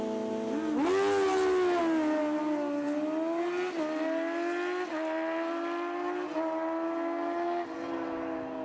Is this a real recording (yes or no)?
yes